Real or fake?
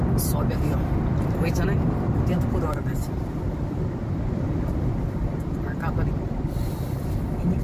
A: fake